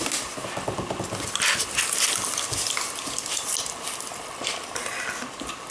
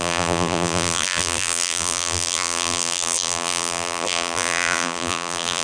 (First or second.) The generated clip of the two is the second